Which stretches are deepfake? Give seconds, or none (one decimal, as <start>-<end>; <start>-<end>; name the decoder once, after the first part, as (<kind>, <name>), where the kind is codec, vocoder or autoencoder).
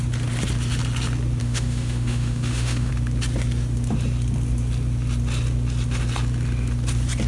1.4-2.9 (autoencoder, DAC-VAE)